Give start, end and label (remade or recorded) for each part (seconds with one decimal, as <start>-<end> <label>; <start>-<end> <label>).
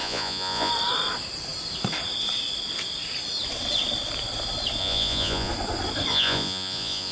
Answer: 0.0-0.7 remade; 0.7-4.8 recorded; 4.8-5.5 remade; 5.5-6.1 recorded; 6.1-7.1 remade